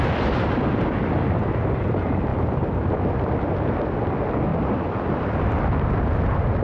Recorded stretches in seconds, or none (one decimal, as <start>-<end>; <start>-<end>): 0.0-2.3; 3.5-4.5; 5.6-6.6